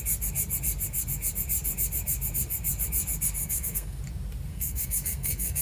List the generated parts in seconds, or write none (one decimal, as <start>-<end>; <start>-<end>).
3.4-4.0; 4.5-5.6